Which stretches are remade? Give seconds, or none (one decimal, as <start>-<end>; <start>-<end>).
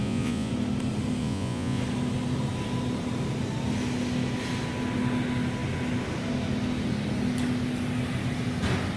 0.0-0.5; 1.2-1.8